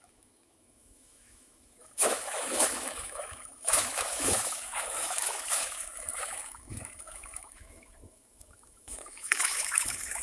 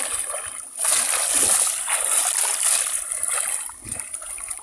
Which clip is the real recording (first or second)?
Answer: second